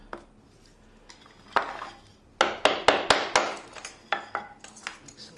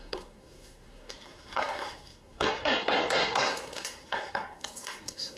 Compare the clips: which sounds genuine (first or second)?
first